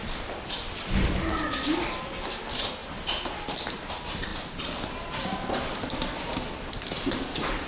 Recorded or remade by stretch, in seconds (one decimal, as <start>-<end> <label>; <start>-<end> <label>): 0.0-1.3 remade; 1.3-7.7 recorded